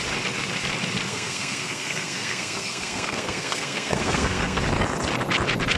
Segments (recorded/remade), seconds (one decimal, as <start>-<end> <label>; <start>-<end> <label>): 0.0-1.1 recorded; 1.1-4.6 remade; 4.6-5.8 recorded